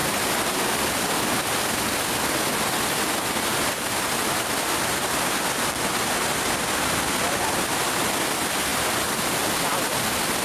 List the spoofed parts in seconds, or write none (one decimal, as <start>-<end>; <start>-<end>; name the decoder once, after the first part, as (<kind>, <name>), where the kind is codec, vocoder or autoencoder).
none